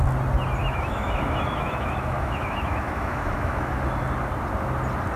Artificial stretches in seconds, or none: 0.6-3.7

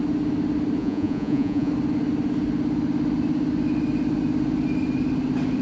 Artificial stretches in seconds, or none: 0.8-1.7

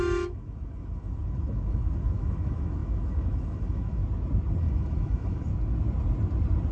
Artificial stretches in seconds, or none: 0.0-4.0; 4.6-5.5

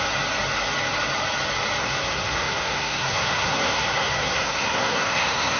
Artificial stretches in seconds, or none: 1.8-5.6

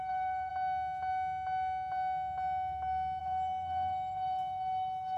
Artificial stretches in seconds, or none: 0.0-0.5; 3.2-5.2

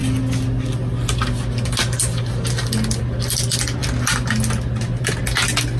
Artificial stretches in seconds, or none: none